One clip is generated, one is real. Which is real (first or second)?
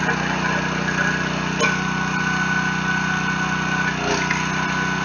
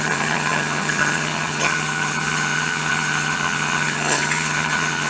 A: first